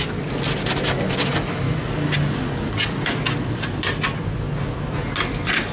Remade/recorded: recorded